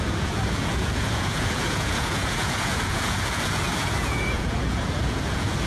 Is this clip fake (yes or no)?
yes